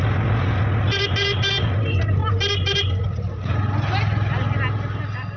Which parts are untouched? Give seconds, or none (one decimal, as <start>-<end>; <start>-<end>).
0.0-5.4